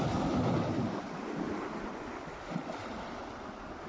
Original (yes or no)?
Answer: yes